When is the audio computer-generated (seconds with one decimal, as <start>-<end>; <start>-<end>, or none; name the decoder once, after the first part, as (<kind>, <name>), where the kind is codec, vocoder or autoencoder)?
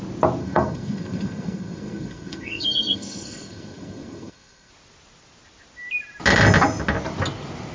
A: 0.4-4.7 (codec, SNAC)